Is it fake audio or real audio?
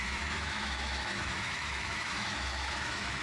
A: fake